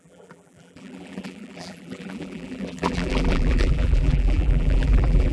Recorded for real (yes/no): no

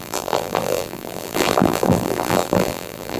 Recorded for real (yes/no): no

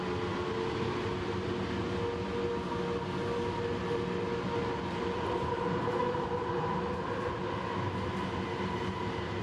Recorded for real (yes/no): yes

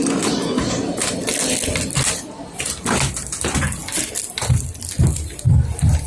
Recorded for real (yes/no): yes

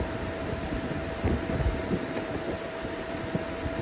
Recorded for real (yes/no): no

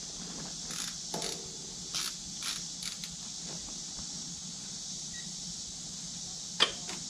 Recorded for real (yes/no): yes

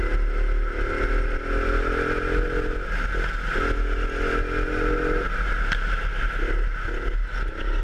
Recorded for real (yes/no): yes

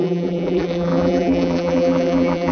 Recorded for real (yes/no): no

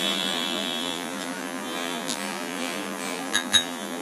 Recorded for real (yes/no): no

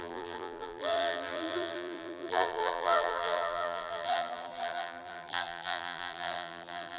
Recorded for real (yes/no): no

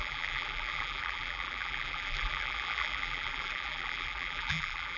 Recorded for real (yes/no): no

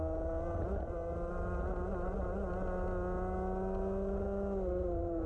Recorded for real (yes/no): yes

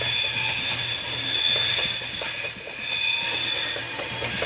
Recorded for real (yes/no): yes